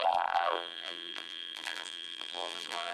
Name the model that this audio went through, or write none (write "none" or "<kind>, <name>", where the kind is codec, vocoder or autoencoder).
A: vocoder, BigVGAN v2